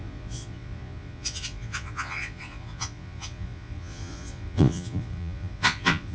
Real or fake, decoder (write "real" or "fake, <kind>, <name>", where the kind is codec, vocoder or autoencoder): fake, vocoder, Vocos